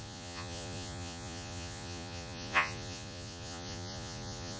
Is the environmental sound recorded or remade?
remade